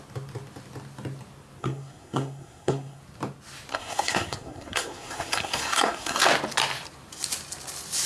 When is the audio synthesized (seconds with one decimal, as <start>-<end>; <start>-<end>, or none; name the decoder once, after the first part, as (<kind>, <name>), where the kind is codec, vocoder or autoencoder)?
1.6-3.0 (codec, SNAC); 3.7-6.2